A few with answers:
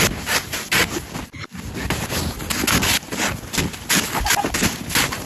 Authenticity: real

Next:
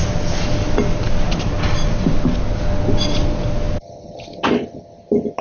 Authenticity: real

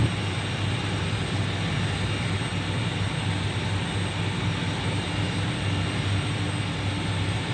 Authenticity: real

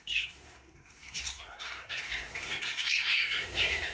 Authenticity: fake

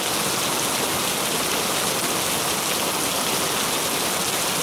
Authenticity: real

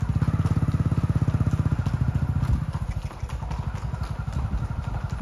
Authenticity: real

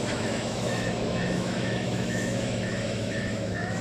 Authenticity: fake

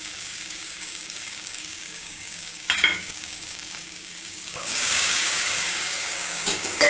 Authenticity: fake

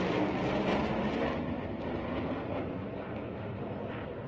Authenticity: real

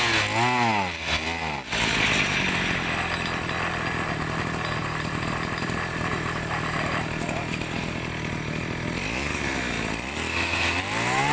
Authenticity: real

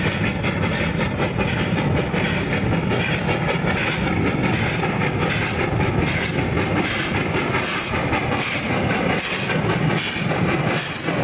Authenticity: real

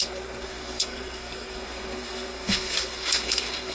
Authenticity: fake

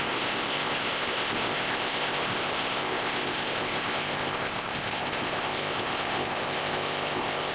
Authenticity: fake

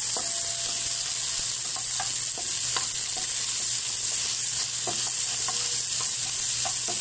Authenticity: real